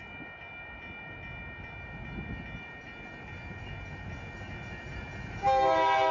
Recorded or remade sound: recorded